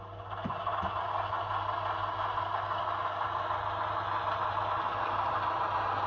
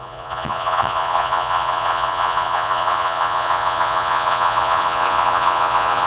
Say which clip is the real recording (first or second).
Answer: first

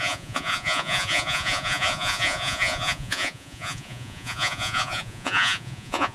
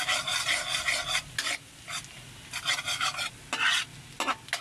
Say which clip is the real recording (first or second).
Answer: second